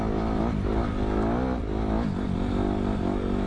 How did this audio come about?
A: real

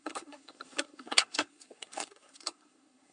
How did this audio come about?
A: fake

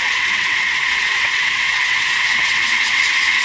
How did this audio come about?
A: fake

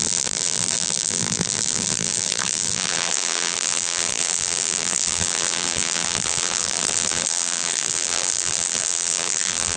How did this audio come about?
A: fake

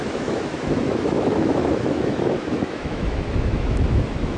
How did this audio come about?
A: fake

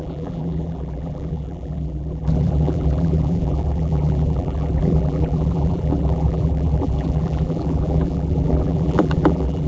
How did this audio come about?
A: fake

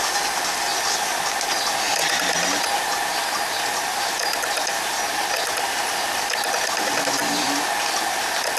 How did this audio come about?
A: real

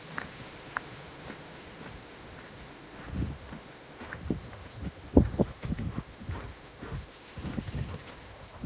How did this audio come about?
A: fake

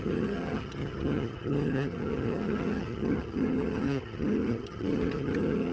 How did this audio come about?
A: fake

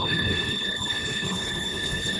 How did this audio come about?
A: fake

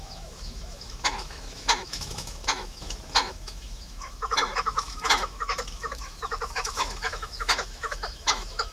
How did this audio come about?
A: fake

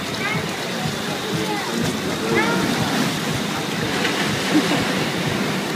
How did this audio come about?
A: real